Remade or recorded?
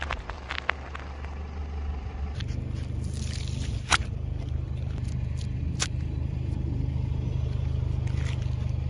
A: recorded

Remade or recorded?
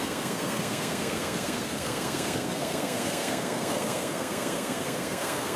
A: remade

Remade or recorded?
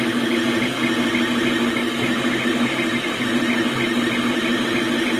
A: recorded